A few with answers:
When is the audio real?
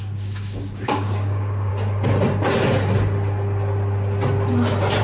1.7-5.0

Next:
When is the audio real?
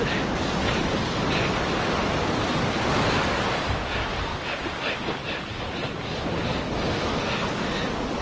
0.0-8.2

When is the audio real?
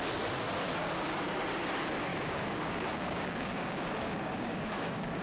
0.0-2.1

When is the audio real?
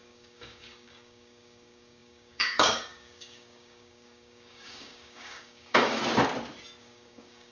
6.0-6.8